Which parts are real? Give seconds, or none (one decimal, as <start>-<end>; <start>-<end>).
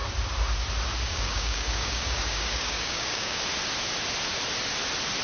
0.0-1.1; 3.4-5.2